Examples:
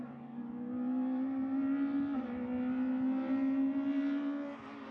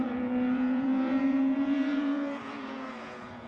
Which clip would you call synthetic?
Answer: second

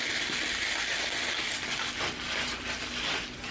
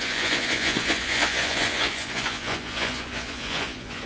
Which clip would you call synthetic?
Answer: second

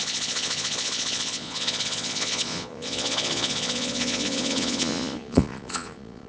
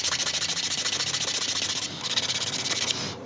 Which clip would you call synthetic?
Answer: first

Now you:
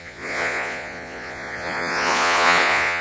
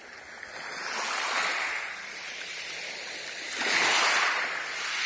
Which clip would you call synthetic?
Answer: first